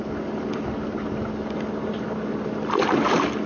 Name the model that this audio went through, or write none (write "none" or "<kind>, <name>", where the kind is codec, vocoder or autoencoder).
none